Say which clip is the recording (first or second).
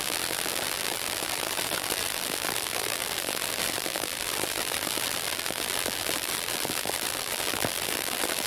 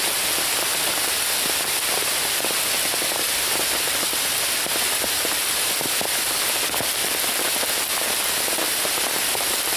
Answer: second